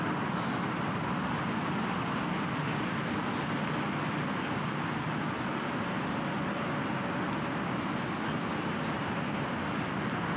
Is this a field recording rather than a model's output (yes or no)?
yes